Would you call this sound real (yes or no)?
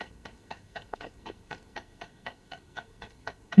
no